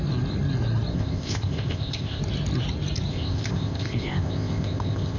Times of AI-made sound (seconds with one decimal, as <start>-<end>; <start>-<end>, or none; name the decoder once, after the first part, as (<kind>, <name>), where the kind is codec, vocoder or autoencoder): 0.9-2.2 (codec, ZipCodec); 3.1-5.2